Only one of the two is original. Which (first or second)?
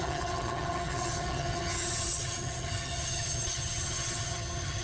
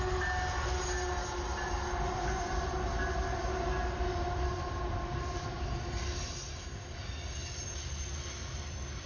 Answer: second